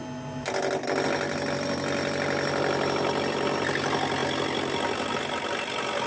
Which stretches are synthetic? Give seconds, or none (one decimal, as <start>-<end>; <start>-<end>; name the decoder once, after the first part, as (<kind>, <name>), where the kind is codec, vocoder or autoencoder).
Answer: none